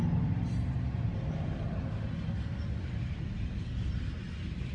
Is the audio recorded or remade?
recorded